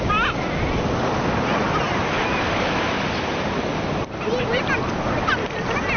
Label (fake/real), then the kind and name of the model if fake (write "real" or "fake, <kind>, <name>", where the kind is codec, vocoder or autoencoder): real